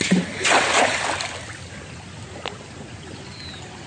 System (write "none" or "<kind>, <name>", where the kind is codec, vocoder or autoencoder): none